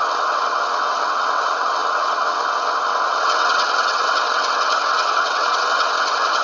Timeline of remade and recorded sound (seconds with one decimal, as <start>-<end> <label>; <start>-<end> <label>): 0.0-6.4 remade